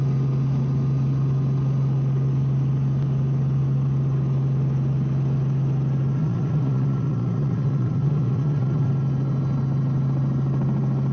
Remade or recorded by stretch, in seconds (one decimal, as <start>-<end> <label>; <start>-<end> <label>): 0.0-6.2 recorded; 6.2-8.9 remade; 8.9-11.1 recorded